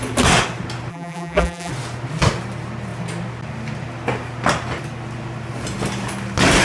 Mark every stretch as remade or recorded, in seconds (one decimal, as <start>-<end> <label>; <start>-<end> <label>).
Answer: 0.0-0.9 recorded; 0.9-1.7 remade; 1.7-6.6 recorded